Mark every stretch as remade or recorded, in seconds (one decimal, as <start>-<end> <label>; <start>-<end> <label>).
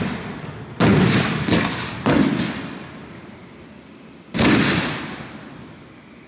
0.0-6.3 recorded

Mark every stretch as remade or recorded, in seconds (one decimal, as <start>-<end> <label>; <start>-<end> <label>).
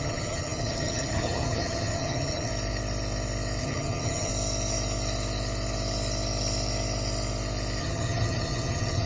0.0-2.5 remade; 2.5-3.6 recorded; 3.6-4.3 remade; 4.3-7.8 recorded; 7.8-9.1 remade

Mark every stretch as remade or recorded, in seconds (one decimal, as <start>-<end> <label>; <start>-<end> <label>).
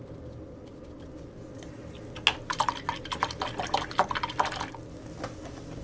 0.0-5.8 recorded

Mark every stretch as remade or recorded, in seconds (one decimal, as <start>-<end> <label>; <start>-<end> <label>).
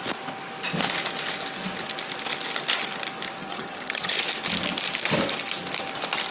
0.0-3.4 recorded; 3.4-4.1 remade; 4.1-6.3 recorded